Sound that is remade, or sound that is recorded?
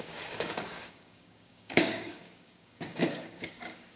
remade